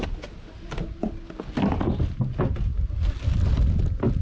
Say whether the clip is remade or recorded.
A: recorded